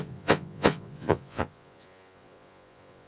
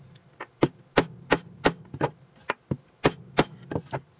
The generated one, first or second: first